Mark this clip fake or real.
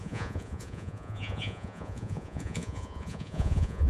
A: fake